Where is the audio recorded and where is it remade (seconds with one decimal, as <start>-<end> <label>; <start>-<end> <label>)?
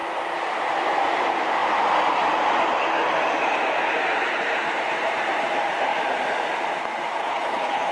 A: 0.0-7.2 recorded; 7.2-7.9 remade